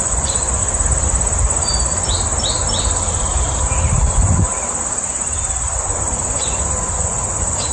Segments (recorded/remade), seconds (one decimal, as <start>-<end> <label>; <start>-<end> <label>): 0.0-0.6 remade; 0.6-4.0 recorded; 4.0-4.5 remade; 4.5-5.7 recorded; 5.7-7.7 remade